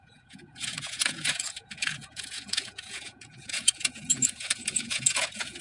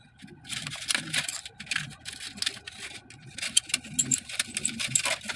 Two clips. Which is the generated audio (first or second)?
first